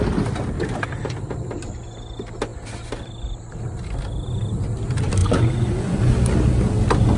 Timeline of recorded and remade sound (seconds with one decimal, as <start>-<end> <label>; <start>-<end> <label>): 0.0-5.2 recorded; 5.2-6.0 remade; 6.0-7.2 recorded